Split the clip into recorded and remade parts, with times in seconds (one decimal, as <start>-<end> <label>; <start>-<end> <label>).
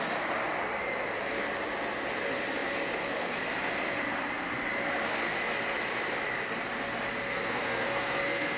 0.0-7.2 recorded; 7.2-8.6 remade